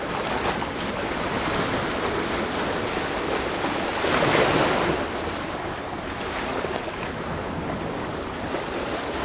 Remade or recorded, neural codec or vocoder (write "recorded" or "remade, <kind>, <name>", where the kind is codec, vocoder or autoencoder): recorded